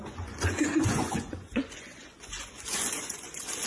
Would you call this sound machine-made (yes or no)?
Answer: yes